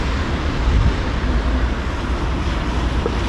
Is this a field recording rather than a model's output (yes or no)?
yes